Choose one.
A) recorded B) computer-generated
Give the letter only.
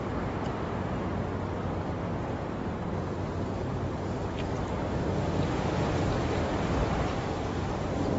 A